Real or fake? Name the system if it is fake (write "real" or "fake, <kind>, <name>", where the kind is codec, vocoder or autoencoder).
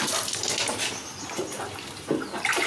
real